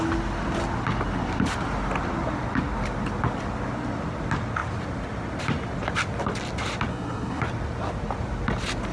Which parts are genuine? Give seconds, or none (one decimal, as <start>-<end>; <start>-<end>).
0.0-6.9; 7.4-8.9